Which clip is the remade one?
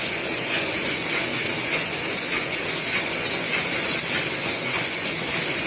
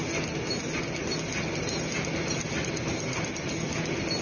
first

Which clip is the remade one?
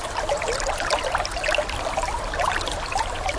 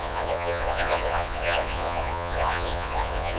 second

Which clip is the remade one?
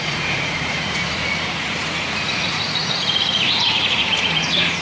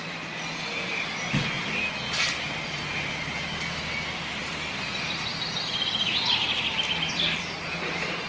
first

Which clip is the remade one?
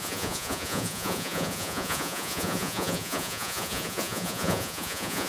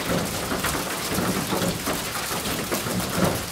first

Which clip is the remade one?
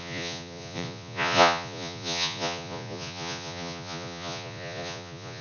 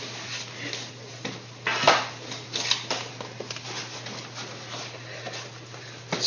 first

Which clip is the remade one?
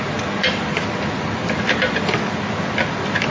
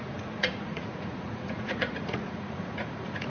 second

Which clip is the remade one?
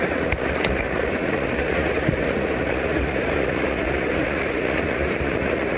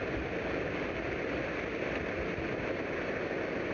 first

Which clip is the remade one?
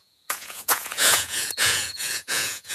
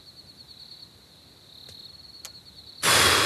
first